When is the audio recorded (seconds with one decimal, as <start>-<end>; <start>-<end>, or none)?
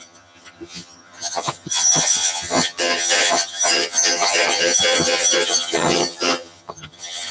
none